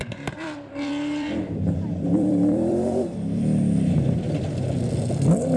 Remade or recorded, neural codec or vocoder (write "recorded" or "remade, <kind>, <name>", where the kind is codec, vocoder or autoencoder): remade, vocoder, BigVGAN v2